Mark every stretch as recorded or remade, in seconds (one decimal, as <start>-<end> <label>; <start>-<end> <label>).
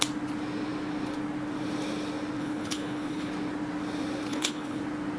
0.0-2.4 recorded; 2.4-3.3 remade; 3.3-4.3 recorded; 4.3-4.8 remade; 4.8-5.2 recorded